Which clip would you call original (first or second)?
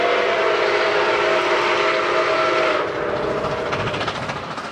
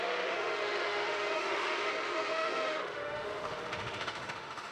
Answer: first